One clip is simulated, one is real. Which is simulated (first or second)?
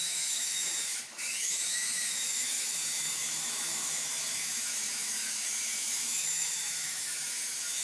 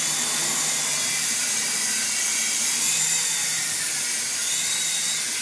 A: first